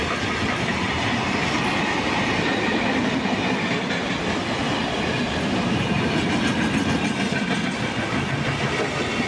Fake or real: real